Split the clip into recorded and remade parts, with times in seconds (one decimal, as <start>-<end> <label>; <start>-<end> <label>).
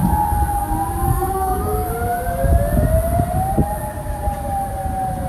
0.0-1.1 recorded; 1.1-1.9 remade; 1.9-5.3 recorded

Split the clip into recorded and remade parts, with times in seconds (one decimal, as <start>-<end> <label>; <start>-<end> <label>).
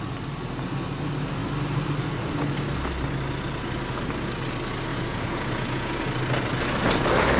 0.0-4.9 recorded; 4.9-6.0 remade; 6.0-7.4 recorded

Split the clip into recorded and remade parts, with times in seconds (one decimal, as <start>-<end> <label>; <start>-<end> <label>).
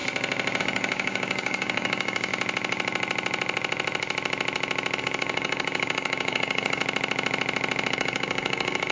0.0-0.6 recorded; 0.6-2.3 remade; 2.3-5.0 recorded; 5.0-6.8 remade; 6.8-7.9 recorded; 7.9-8.9 remade